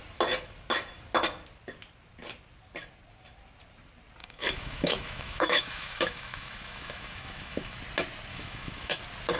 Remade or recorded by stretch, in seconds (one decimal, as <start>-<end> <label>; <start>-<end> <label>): 0.0-4.2 recorded; 4.2-7.8 remade; 7.8-8.3 recorded; 8.3-9.0 remade; 9.0-9.4 recorded